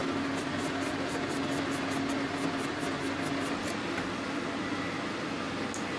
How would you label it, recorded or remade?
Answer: recorded